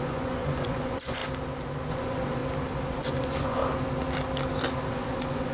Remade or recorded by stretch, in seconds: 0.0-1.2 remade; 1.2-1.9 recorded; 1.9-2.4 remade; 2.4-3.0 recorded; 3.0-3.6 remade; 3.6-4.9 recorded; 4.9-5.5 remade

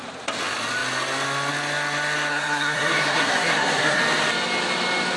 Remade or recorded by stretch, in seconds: 0.0-2.3 recorded; 2.3-4.0 remade; 4.0-5.2 recorded

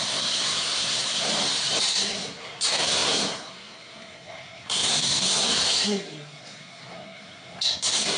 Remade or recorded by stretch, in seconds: 0.0-1.3 remade; 1.3-1.9 recorded; 1.9-8.2 remade

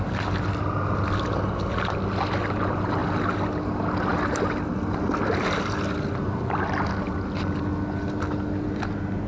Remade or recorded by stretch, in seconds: 0.0-9.3 recorded

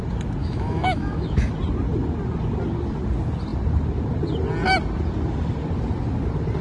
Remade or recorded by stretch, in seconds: 0.0-0.4 recorded; 0.4-1.5 remade; 1.5-6.6 recorded

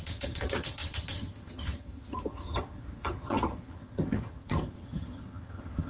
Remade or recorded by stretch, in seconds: 0.0-5.9 remade